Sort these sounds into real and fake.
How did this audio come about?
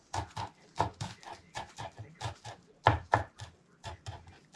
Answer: real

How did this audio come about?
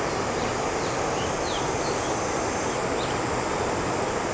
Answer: real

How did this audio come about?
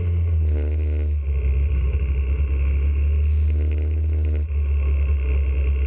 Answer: real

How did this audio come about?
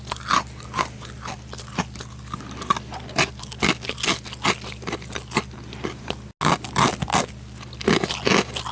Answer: real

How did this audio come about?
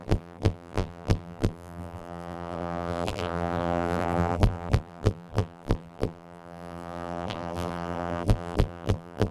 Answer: fake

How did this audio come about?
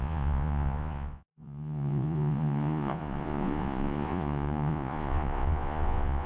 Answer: fake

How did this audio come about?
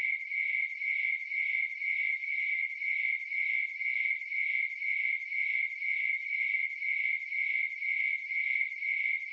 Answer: real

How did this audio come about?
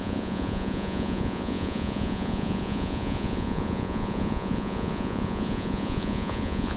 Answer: fake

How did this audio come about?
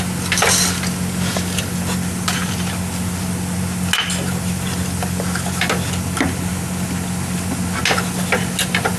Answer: real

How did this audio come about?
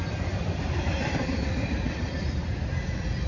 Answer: fake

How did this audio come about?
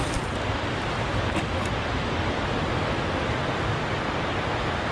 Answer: real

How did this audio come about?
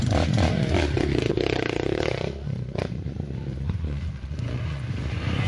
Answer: fake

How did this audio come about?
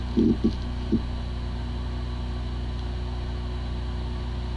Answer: real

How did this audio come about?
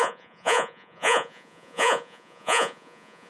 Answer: fake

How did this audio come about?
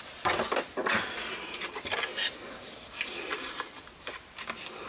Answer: real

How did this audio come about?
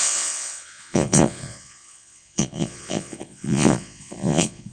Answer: fake